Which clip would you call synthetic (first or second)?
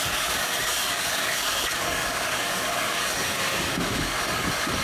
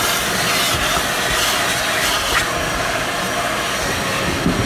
first